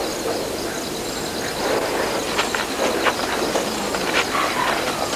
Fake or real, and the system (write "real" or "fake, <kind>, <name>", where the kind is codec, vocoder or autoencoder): real